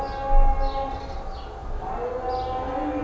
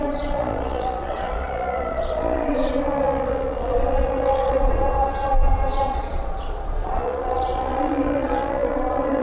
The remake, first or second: second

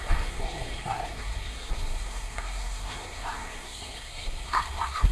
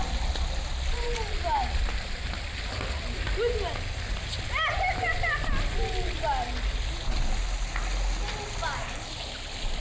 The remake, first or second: first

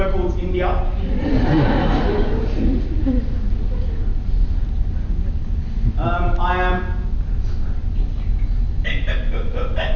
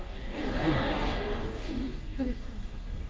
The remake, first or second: second